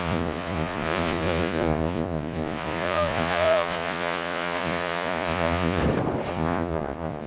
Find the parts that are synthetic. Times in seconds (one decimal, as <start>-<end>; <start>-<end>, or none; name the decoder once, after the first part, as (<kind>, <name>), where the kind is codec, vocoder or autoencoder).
0.0-5.8 (vocoder, Vocos); 6.3-7.3